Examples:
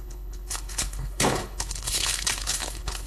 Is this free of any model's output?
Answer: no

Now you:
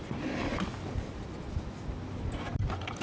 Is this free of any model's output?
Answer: yes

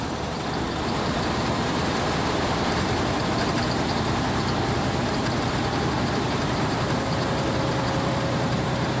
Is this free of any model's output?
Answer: no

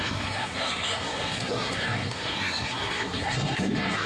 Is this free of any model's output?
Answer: no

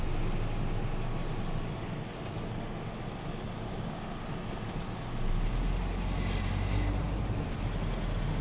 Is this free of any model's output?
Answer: yes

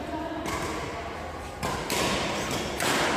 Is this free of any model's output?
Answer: yes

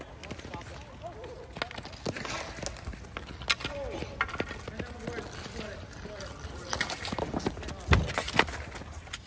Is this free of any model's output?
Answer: yes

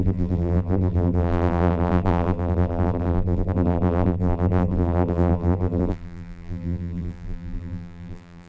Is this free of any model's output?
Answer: no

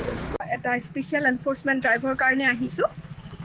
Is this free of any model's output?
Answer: no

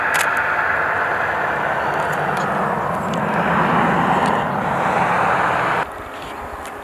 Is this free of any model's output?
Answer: yes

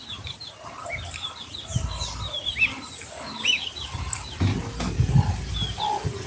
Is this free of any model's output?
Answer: yes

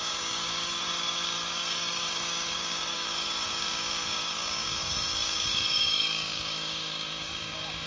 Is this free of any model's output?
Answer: no